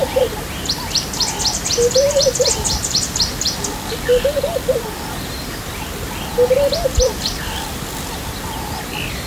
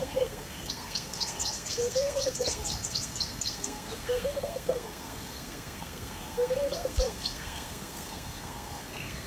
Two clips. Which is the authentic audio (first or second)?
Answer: first